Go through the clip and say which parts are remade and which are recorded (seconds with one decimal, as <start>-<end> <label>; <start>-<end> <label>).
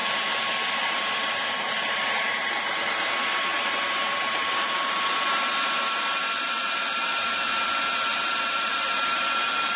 0.0-9.8 remade